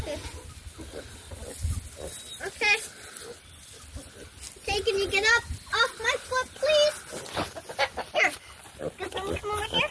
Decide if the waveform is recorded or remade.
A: recorded